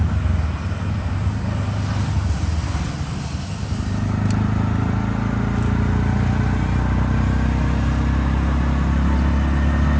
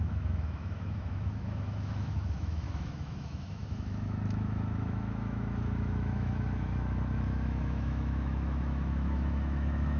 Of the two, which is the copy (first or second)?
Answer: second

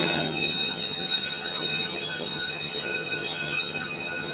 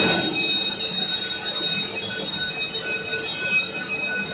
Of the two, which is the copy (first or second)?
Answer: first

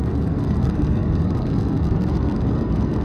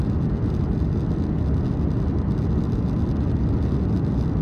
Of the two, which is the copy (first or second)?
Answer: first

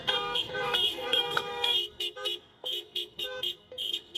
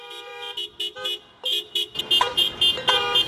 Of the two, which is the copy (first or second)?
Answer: first